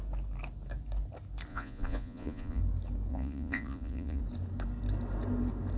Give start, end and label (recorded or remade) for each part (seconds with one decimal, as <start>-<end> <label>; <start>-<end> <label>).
0.0-1.5 recorded; 1.5-2.6 remade; 2.6-3.1 recorded; 3.1-4.2 remade; 4.2-5.8 recorded